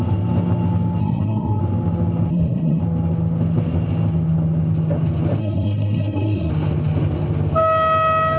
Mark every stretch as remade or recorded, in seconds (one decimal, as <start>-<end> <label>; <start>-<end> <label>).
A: 0.0-1.0 recorded; 1.0-1.6 remade; 1.6-2.3 recorded; 2.3-2.8 remade; 2.8-5.4 recorded; 5.4-6.5 remade; 6.5-8.4 recorded